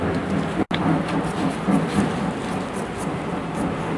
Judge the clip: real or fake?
real